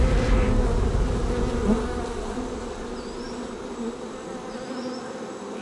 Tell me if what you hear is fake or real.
real